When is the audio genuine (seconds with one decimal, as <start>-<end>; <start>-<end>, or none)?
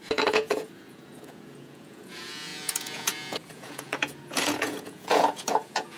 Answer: none